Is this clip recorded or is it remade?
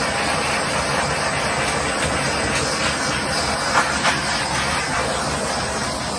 recorded